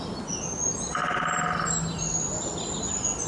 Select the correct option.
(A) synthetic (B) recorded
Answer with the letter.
B